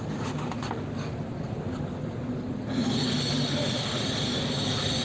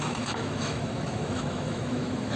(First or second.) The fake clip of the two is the second